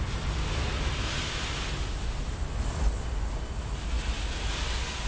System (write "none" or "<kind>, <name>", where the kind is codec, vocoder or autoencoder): none